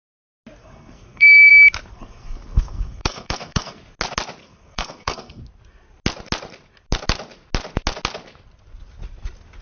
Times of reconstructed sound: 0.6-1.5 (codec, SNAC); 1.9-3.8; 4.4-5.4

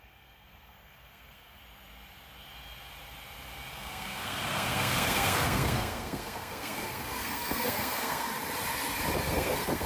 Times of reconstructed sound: 0.0-1.6 (codec, SNAC); 3.7-8.3; 9.2-9.9

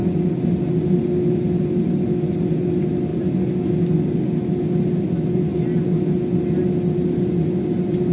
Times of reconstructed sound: none

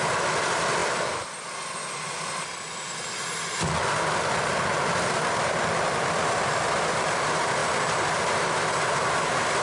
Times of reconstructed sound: none

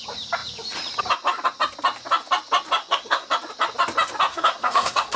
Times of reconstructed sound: 2.8-3.3 (codec, SNAC); 4.3-5.2

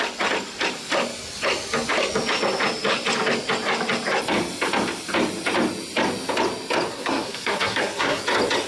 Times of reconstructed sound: 6.9-8.2 (codec, SNAC)

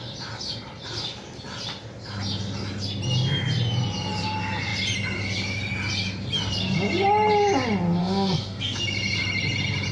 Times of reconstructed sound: 8.0-8.8 (codec, SNAC)

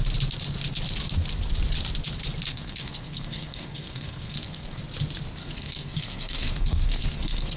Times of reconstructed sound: 2.5-4.8 (codec, SNAC); 5.4-7.6